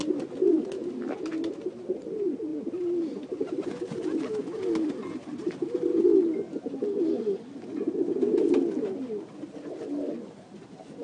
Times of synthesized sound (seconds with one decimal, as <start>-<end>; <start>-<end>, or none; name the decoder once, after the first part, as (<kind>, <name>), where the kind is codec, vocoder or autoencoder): none